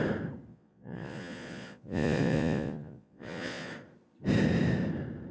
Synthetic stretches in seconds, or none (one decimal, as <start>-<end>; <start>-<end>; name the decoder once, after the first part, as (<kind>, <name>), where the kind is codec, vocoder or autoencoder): 0.5-3.7 (vocoder, Vocos)